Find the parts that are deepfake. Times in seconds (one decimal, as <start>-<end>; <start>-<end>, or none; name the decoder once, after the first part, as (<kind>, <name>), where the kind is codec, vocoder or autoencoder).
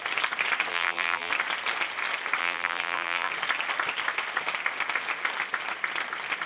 0.7-1.3 (vocoder, BigVGAN v2); 2.4-3.3